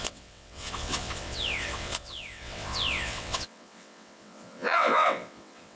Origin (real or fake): fake